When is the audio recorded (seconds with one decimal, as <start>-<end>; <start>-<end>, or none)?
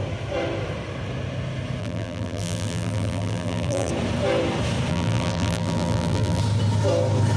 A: 0.0-1.8; 3.9-4.9; 6.4-7.4